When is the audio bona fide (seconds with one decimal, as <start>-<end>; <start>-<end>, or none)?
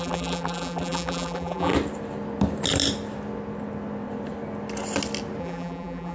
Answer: 1.7-5.4